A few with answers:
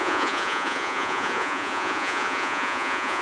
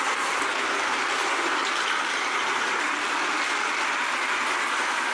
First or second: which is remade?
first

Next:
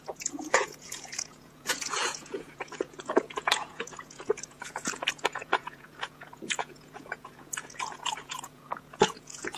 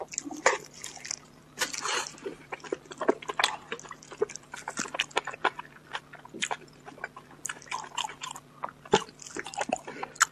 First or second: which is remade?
first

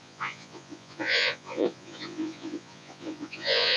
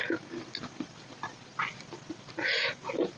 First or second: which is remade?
first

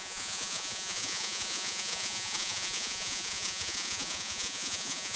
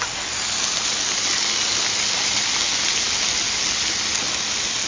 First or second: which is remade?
first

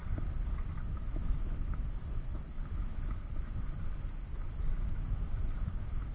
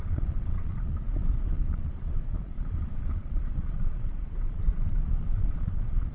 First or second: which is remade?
second